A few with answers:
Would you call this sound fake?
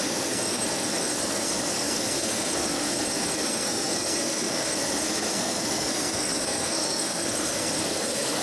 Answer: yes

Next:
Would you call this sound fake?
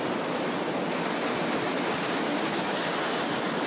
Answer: no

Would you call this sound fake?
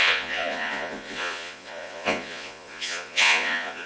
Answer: yes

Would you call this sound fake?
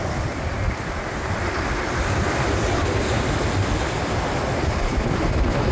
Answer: yes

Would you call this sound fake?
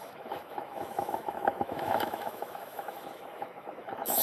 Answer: yes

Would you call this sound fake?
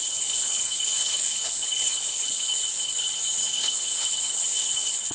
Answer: yes